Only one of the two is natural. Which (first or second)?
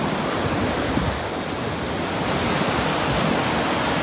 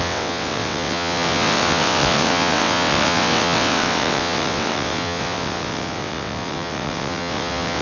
first